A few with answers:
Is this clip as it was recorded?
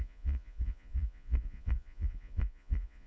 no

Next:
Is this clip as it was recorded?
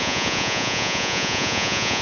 no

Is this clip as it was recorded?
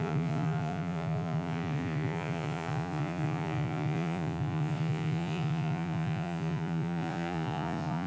no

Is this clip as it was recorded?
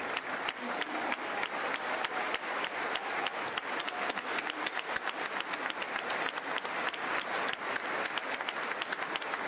yes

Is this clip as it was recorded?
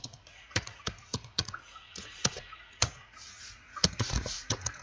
no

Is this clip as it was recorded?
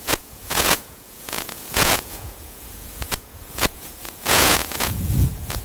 no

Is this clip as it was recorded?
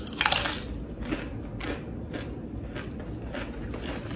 yes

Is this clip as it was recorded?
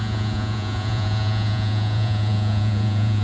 no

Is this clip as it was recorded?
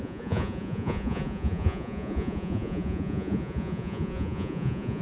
no